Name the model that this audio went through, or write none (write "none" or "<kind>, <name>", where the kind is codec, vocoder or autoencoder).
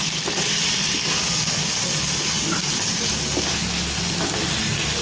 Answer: none